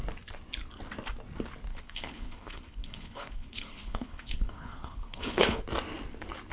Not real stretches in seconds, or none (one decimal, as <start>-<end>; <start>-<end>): 1.7-5.6